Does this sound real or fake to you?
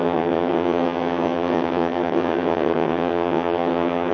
fake